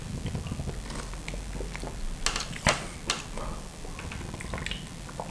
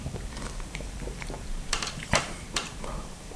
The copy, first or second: second